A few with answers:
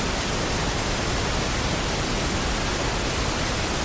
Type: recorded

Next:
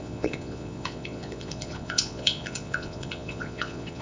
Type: remade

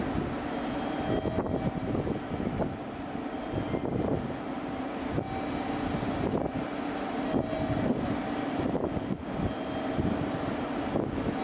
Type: recorded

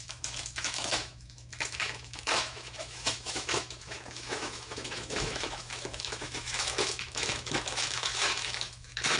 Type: remade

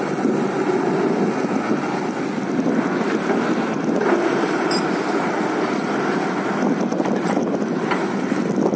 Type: recorded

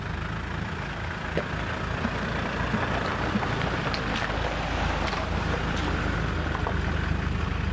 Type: recorded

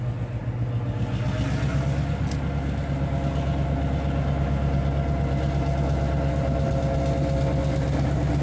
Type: recorded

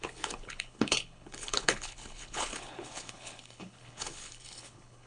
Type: remade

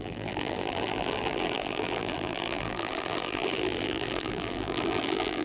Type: remade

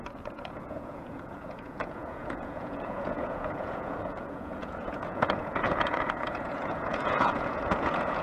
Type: remade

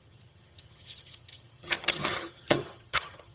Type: remade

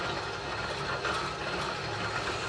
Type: recorded